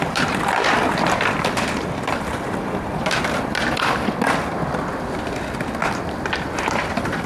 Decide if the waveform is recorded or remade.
remade